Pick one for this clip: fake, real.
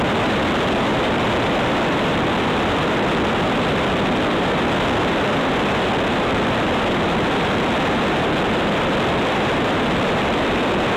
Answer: fake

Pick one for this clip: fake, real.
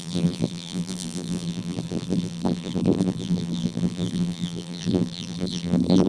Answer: fake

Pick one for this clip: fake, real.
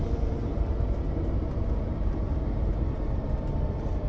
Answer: fake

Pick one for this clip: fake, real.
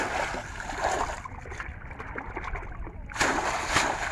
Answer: real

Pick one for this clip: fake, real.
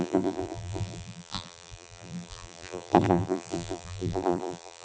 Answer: fake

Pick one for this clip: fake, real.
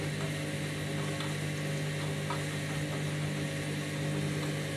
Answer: real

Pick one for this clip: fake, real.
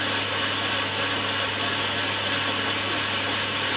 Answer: real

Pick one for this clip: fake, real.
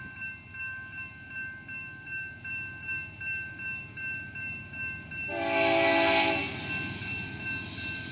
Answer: real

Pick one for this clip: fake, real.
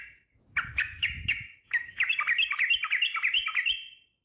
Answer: fake